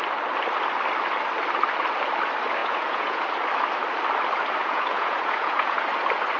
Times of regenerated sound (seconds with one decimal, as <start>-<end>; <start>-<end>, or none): 2.6-3.2; 4.6-5.8